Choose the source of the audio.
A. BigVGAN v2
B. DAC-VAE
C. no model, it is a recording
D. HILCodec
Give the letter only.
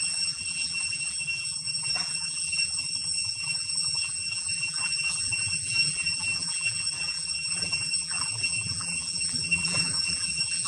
A